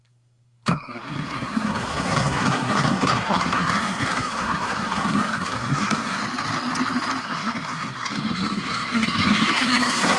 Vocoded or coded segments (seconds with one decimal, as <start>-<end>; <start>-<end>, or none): 0.0-6.2; 7.2-10.2